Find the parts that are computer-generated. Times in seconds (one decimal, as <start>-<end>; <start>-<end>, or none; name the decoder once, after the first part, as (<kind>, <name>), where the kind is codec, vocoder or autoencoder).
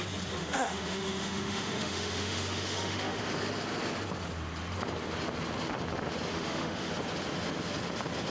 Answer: 0.4-3.2 (autoencoder, DAC-VAE); 6.3-6.9